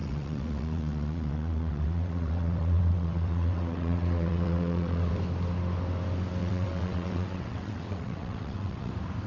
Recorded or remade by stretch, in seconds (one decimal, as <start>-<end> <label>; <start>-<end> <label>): 0.0-5.1 remade; 5.1-6.4 recorded; 6.4-8.9 remade; 8.9-9.3 recorded